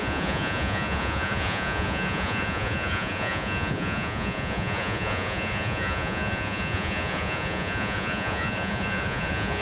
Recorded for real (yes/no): no